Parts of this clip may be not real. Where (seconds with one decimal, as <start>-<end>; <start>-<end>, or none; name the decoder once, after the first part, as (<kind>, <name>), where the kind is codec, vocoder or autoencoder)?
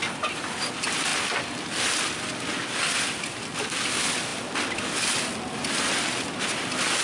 none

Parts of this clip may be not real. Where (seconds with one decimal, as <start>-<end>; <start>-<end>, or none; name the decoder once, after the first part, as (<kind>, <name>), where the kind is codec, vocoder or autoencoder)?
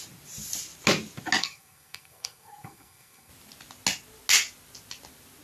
1.4-3.3 (codec, SNAC)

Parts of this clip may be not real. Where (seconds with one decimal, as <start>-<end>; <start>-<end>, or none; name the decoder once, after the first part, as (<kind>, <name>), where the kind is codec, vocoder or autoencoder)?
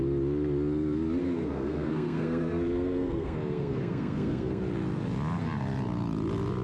1.2-4.6 (codec, SNAC)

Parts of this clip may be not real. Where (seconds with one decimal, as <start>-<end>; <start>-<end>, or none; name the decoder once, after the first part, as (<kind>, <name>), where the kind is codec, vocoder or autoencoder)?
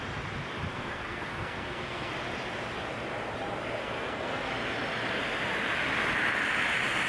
0.7-2.1 (codec, SNAC); 3.8-4.5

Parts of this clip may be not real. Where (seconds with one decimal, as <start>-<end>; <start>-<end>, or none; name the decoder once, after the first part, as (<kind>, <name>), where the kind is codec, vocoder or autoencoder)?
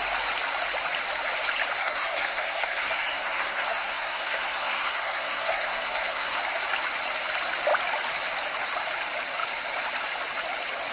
1.8-6.4 (codec, SNAC)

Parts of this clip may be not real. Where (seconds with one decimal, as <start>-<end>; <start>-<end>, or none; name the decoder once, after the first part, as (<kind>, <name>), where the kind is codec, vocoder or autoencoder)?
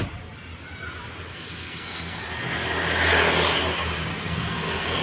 1.3-2.2 (codec, SNAC); 4.1-5.0